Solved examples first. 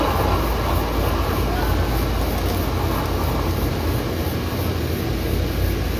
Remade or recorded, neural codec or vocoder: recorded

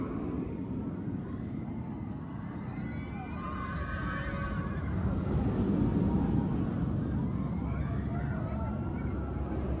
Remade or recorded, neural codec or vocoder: recorded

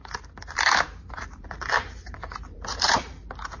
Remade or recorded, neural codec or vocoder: remade, vocoder, BigVGAN v2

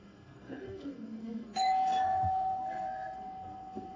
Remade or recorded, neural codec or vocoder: remade, codec, SNAC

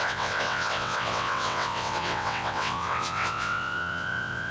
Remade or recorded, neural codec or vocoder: remade, vocoder, WaveNeXt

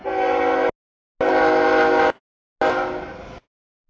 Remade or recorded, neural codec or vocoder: recorded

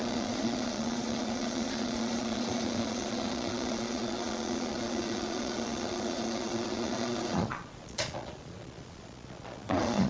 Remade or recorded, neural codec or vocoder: remade, vocoder, Vocos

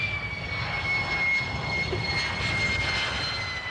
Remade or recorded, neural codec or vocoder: recorded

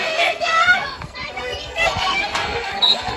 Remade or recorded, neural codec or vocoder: remade, codec, SNAC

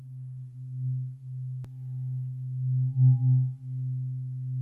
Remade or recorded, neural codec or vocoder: recorded